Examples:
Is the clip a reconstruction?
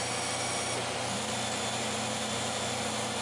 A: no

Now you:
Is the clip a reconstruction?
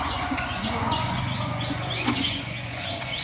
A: yes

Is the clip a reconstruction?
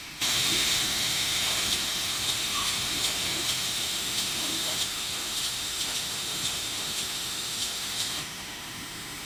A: yes